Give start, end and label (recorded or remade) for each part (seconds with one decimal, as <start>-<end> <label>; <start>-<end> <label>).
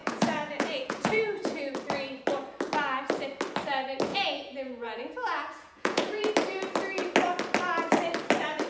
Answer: 0.0-1.7 remade; 1.7-4.1 recorded; 4.1-6.3 remade; 6.3-8.7 recorded